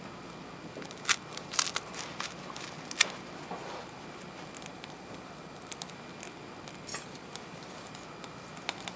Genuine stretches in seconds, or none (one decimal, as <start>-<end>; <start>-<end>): 0.0-4.7; 5.9-6.9; 7.9-9.0